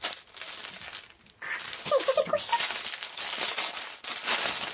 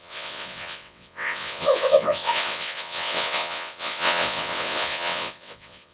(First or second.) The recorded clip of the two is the first